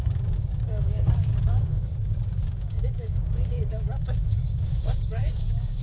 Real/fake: fake